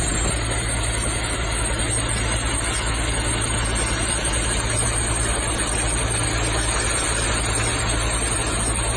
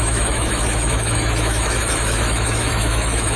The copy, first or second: second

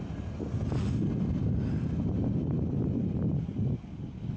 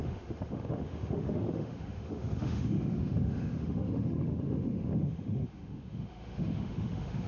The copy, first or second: second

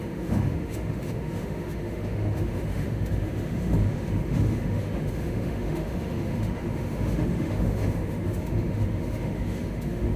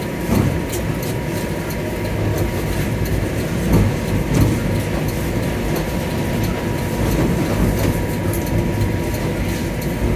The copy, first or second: first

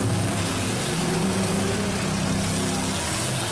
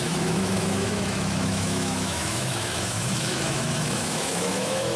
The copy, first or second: second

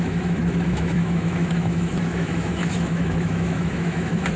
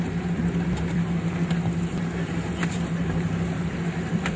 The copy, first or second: first